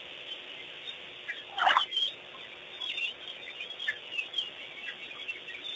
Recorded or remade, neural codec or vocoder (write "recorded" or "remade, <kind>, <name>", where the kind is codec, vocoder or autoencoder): recorded